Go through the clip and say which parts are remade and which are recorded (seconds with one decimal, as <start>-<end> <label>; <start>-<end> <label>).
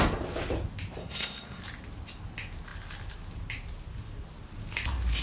0.0-1.0 recorded; 1.0-1.6 remade; 1.6-5.2 recorded